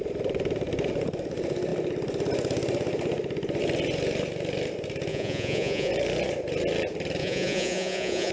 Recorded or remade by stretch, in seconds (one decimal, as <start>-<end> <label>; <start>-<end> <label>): 0.0-5.1 recorded; 5.1-5.9 remade; 5.9-7.2 recorded; 7.2-8.3 remade